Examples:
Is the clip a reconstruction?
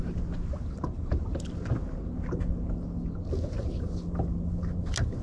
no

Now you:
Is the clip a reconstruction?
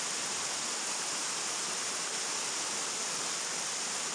no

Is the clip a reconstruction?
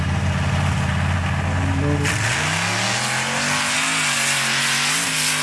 no